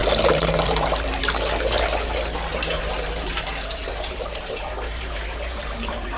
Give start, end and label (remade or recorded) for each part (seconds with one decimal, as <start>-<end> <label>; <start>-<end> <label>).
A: 0.0-1.2 remade; 1.2-2.5 recorded; 2.5-6.2 remade